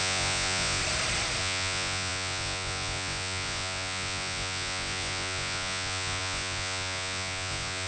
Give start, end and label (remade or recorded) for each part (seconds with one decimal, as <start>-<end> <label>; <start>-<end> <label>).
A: 0.0-0.8 remade; 0.8-1.4 recorded; 1.4-7.9 remade